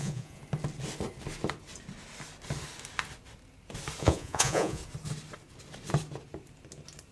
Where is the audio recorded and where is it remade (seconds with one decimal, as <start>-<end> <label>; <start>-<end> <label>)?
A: 0.0-0.4 remade; 0.4-4.0 recorded; 4.0-4.8 remade; 4.8-7.1 recorded